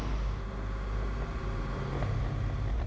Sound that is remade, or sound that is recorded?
recorded